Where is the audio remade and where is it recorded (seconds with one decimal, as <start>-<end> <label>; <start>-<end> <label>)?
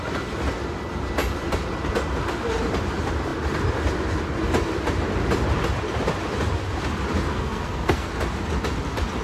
0.0-7.3 recorded; 7.3-8.1 remade; 8.1-9.2 recorded